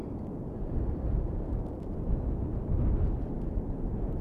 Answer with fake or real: real